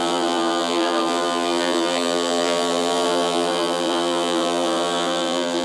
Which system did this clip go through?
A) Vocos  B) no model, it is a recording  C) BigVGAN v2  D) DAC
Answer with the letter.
C